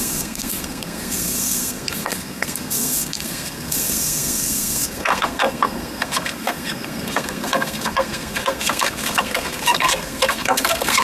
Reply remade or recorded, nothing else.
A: remade